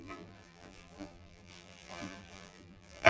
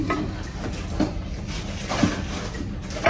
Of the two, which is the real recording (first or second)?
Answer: second